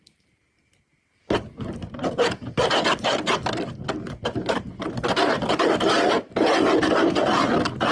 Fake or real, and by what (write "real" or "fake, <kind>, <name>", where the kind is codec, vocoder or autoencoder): fake, vocoder, BigVGAN v2